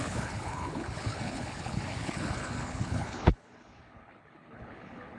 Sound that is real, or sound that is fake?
fake